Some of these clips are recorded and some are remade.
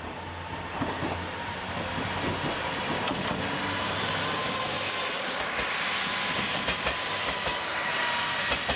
recorded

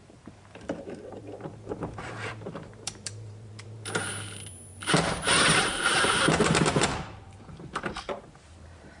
remade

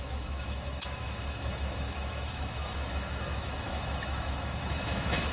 remade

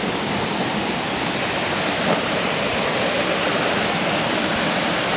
recorded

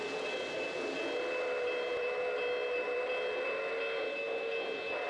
recorded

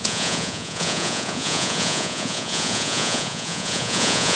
remade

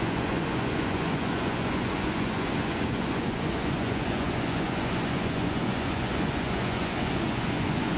remade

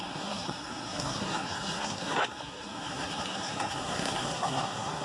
remade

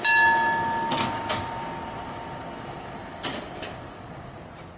recorded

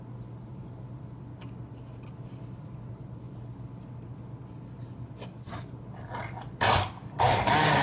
recorded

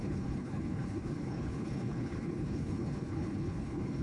remade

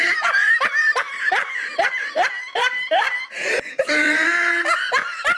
remade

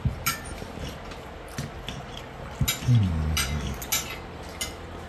recorded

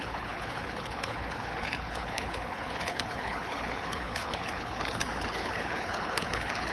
remade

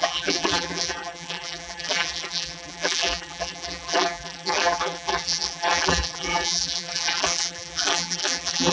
remade